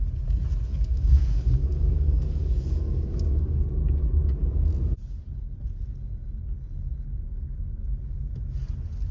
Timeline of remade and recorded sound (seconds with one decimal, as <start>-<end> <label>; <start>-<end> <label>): 0.0-0.7 recorded; 0.7-3.6 remade; 3.6-9.1 recorded